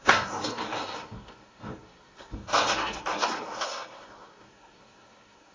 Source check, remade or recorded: remade